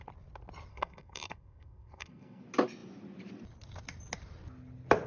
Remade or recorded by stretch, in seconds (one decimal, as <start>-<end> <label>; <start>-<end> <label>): 0.0-0.7 recorded; 0.7-2.4 remade; 2.4-5.1 recorded

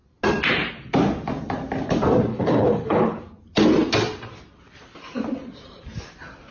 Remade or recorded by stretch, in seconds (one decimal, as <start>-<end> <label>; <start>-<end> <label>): 0.0-2.3 recorded; 2.3-3.2 remade; 3.2-6.5 recorded

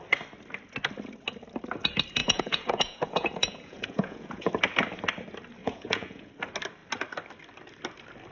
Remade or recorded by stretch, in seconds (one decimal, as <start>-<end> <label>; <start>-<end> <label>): 0.0-2.2 recorded; 2.2-4.5 remade; 4.5-5.6 recorded; 5.6-6.3 remade; 6.3-8.3 recorded

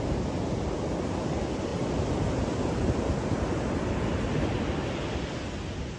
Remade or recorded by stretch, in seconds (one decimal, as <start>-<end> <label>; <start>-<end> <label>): 0.0-6.0 recorded

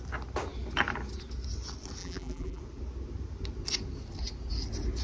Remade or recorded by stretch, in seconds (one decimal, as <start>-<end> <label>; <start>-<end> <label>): 0.0-2.0 recorded; 2.0-2.6 remade; 2.6-5.0 recorded